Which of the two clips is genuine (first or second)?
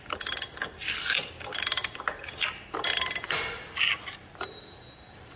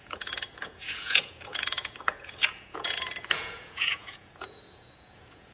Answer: first